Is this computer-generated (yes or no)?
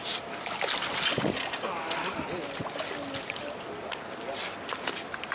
no